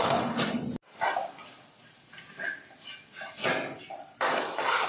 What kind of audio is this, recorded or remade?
recorded